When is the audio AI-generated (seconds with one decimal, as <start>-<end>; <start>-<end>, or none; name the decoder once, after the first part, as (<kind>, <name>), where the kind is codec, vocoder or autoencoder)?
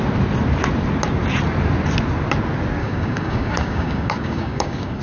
2.8-5.0 (codec, DAC)